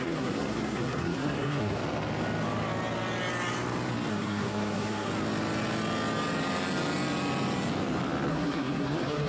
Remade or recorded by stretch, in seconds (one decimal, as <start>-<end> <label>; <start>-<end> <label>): 0.0-1.8 remade; 1.8-4.1 recorded; 4.1-5.1 remade; 5.1-8.3 recorded; 8.3-9.3 remade